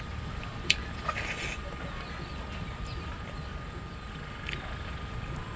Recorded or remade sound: remade